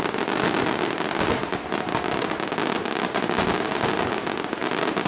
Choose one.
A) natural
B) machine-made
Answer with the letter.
A